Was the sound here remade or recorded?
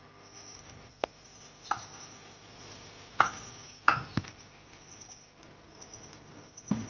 recorded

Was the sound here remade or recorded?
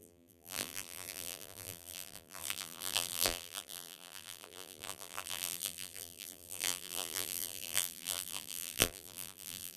remade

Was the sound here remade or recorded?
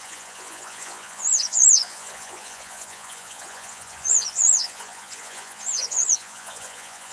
remade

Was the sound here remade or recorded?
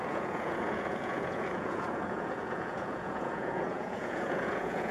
remade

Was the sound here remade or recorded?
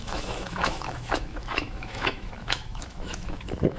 remade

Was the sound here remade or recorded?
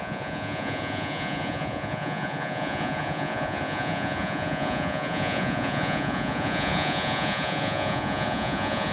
remade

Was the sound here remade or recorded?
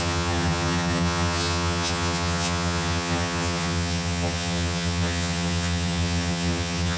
remade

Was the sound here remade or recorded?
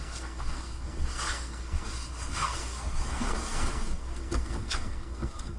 remade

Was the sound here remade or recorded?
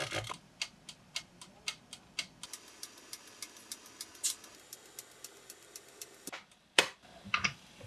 recorded